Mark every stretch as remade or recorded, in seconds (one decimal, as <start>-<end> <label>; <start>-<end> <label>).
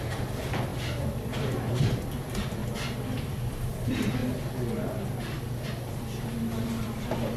0.0-0.7 remade; 0.7-1.7 recorded; 1.7-2.6 remade; 2.6-3.2 recorded; 3.2-4.2 remade; 4.2-6.7 recorded; 6.7-7.4 remade